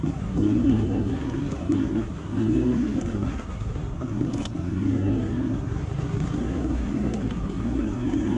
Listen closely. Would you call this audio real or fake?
fake